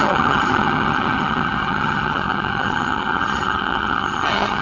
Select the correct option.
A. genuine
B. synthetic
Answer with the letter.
B